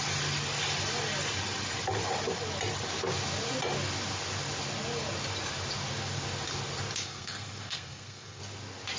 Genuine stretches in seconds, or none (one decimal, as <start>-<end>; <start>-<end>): 0.0-7.0; 8.4-9.0